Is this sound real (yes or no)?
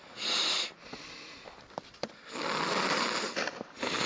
yes